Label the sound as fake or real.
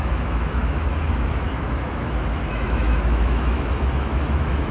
fake